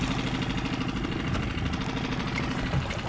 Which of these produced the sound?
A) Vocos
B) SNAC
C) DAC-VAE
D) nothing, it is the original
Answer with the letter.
D